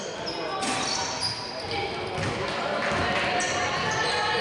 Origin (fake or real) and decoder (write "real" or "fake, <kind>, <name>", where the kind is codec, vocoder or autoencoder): real